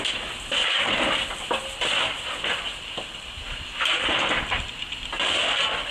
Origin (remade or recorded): recorded